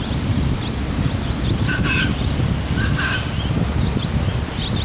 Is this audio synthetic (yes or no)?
no